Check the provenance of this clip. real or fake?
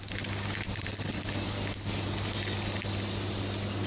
real